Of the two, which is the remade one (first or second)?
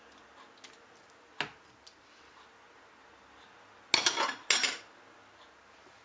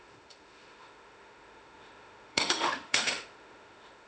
second